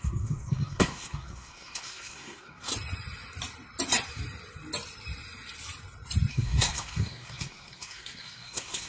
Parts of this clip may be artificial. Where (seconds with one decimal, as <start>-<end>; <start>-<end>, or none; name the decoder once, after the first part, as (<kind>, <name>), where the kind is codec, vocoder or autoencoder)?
0.0-2.7 (codec, SNAC); 6.3-8.9